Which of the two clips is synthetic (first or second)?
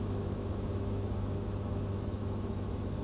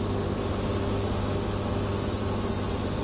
first